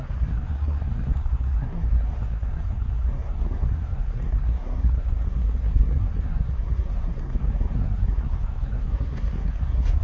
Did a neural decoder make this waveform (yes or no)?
yes